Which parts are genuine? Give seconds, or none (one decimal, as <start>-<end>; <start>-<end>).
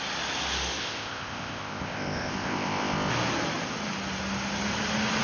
0.0-0.8; 3.1-5.2